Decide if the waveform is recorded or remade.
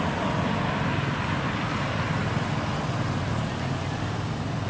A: recorded